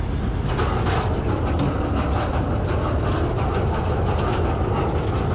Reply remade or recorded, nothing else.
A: recorded